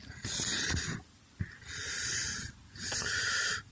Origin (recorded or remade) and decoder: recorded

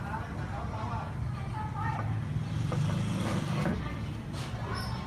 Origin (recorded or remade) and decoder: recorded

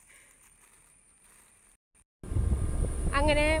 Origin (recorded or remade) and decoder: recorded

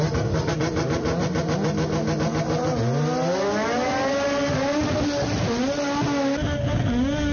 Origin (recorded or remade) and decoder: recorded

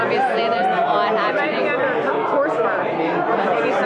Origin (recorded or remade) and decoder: recorded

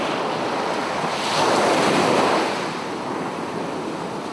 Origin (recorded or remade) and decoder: recorded